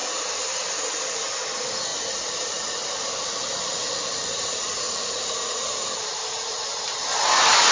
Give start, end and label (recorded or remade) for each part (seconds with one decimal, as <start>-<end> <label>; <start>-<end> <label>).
0.0-0.8 remade; 0.8-1.9 recorded; 1.9-6.5 remade; 6.5-7.7 recorded